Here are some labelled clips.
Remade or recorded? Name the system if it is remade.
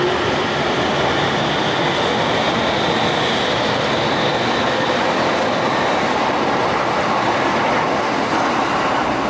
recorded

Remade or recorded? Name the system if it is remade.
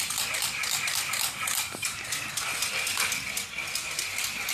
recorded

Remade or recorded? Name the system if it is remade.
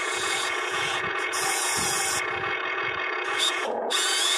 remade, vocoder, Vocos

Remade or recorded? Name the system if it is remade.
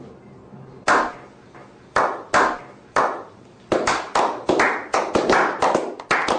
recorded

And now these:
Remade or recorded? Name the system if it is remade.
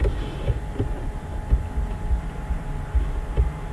recorded